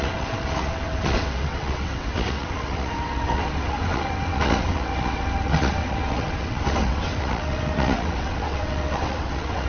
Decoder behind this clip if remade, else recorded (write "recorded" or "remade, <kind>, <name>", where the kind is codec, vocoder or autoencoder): remade, vocoder, WaveNeXt